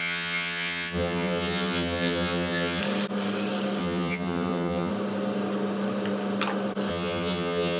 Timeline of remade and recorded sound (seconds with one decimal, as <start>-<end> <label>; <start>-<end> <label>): 0.0-2.8 remade; 2.8-3.8 recorded; 3.8-4.9 remade; 4.9-6.9 recorded; 6.9-7.8 remade